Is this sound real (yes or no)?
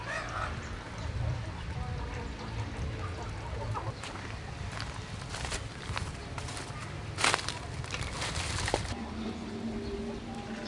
yes